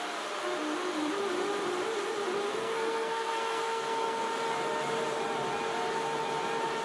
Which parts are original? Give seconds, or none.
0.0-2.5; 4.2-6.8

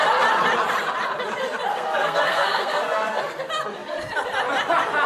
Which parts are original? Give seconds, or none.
0.0-1.7; 3.2-5.1